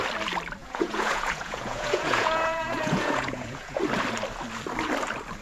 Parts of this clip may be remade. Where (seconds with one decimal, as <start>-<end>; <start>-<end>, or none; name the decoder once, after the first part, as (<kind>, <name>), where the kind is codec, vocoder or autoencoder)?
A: 0.6-3.8 (vocoder, Vocos)